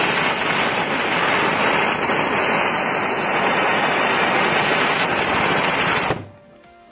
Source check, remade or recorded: recorded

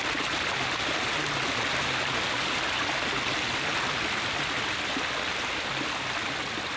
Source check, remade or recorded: recorded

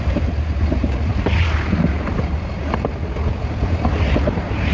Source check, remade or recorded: remade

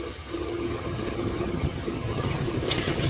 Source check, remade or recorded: remade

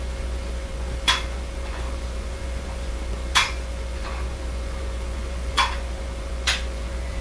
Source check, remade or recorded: remade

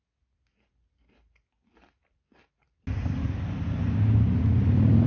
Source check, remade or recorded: recorded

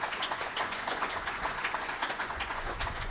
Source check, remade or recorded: remade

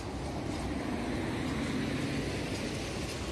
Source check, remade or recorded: recorded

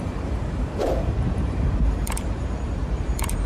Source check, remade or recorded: remade